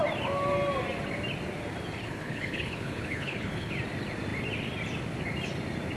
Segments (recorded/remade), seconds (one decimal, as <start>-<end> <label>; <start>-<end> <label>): 0.0-2.0 recorded; 2.0-3.7 remade; 3.7-6.0 recorded